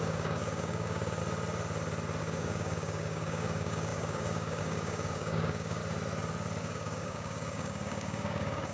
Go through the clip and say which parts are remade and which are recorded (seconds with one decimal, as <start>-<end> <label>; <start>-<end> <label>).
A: 0.0-1.2 remade; 1.2-2.2 recorded; 2.2-5.8 remade; 5.8-6.6 recorded; 6.6-8.7 remade